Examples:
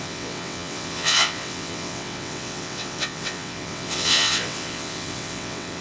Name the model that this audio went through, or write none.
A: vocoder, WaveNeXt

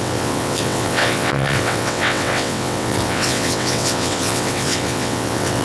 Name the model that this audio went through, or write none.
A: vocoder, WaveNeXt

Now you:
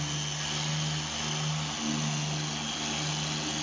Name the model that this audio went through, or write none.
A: none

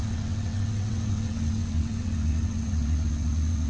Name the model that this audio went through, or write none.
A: vocoder, WaveNeXt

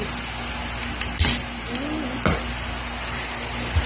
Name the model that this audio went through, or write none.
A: none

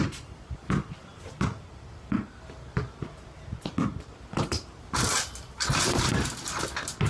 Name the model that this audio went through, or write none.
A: none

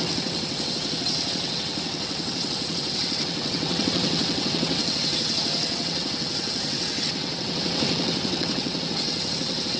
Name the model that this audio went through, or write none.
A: vocoder, WaveNeXt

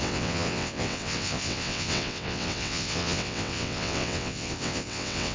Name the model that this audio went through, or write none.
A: vocoder, WaveNeXt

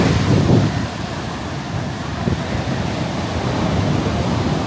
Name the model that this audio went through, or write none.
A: none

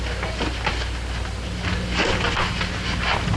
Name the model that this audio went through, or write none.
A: none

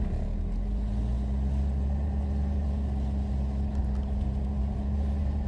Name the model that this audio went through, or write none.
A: none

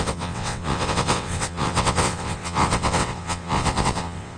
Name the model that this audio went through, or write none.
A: vocoder, WaveNeXt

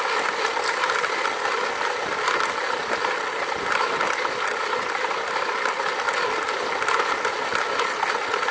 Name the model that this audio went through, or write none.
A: none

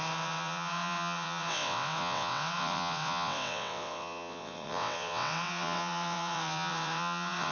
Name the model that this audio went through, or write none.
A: vocoder, WaveNeXt